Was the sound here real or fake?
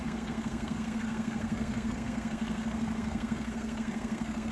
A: fake